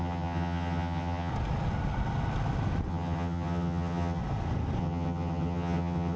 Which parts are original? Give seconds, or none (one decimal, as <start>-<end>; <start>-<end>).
1.3-2.9; 4.2-4.8